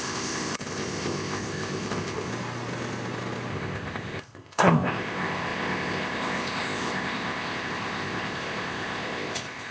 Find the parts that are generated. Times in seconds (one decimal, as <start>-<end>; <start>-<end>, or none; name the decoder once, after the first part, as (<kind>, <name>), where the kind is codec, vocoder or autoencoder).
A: 0.0-2.3 (codec, ZipCodec); 3.5-9.7